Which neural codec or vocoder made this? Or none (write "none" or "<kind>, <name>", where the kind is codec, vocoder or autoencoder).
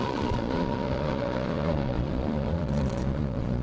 vocoder, Vocos